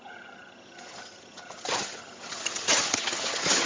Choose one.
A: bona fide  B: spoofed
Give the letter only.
B